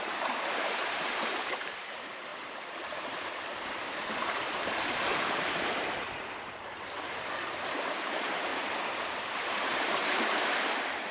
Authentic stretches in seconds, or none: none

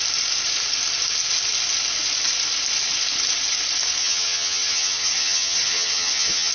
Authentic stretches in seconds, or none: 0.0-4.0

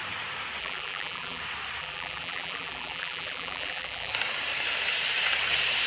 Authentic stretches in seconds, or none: 0.0-0.6; 1.4-1.8; 4.1-5.9

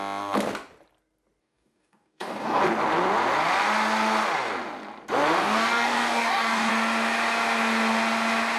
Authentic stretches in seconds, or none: 0.0-1.4; 2.6-5.4; 6.7-8.6

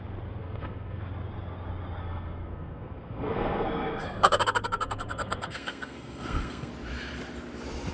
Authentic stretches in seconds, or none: 0.0-0.4; 1.0-2.0; 6.7-7.9

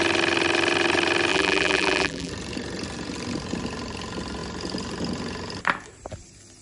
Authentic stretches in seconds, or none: 0.0-1.3; 2.3-6.6

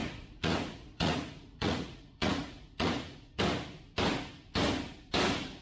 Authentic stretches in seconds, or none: 3.4-5.6

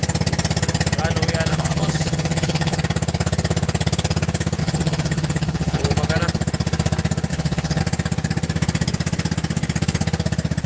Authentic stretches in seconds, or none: 0.0-1.5; 2.8-4.6; 5.8-7.3; 7.8-10.7